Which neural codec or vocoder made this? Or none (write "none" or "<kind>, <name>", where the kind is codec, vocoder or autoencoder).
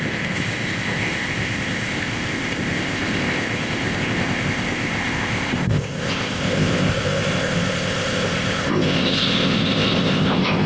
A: codec, ZipCodec